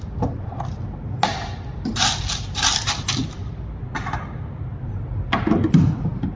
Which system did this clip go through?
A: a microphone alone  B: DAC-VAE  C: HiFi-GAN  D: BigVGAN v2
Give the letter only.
A